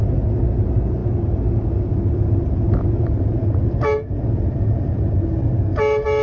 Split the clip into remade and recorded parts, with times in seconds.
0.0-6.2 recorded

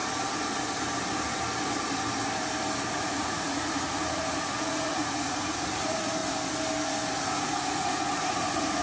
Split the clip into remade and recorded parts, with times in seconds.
0.0-2.8 recorded; 2.8-6.2 remade; 6.2-7.2 recorded; 7.2-8.8 remade

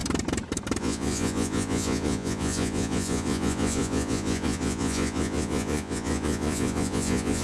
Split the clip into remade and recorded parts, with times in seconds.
0.0-0.8 recorded; 0.8-7.4 remade

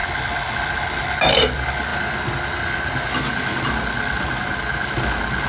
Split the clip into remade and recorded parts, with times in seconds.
0.0-5.5 recorded